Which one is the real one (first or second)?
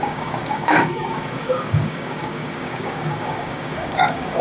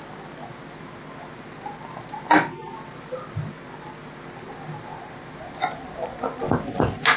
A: second